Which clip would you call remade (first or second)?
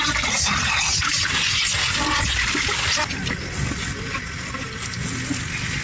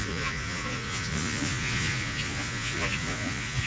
second